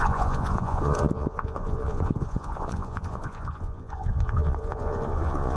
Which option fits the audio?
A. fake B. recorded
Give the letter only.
A